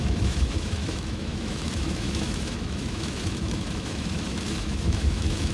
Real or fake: fake